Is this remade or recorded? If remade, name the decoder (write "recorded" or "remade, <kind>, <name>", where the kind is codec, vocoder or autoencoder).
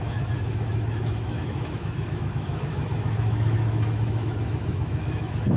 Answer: remade, autoencoder, DAC-VAE